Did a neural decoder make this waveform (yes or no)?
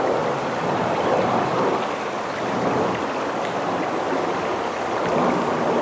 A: no